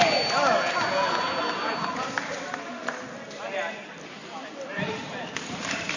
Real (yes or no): yes